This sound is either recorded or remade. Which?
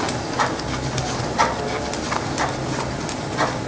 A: recorded